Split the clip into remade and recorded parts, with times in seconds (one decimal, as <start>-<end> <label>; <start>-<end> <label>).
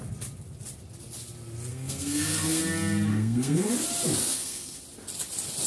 0.0-1.7 recorded; 1.7-2.6 remade; 2.6-3.1 recorded; 3.1-3.7 remade; 3.7-4.2 recorded; 4.2-4.8 remade; 4.8-5.7 recorded